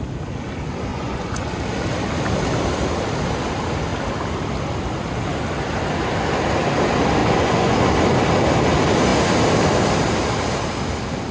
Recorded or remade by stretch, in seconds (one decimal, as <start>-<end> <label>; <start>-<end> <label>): 0.0-0.9 recorded; 0.9-1.5 remade; 1.5-7.2 recorded; 7.2-7.9 remade; 7.9-11.3 recorded